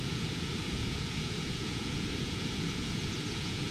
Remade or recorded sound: remade